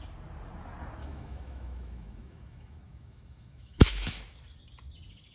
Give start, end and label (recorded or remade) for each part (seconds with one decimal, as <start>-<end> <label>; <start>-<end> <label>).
0.0-1.0 recorded; 1.0-4.2 remade; 4.2-5.3 recorded